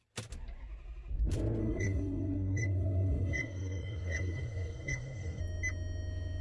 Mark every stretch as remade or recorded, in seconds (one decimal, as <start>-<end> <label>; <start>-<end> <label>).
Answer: 0.0-1.6 recorded; 1.6-5.4 remade; 5.4-6.4 recorded